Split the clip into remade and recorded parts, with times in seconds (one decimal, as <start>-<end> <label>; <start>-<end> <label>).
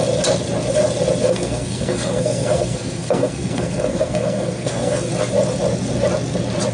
0.0-1.2 recorded; 1.2-5.1 remade; 5.1-6.7 recorded